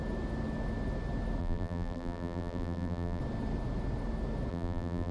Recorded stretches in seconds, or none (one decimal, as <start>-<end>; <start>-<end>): 0.0-1.4; 3.2-4.5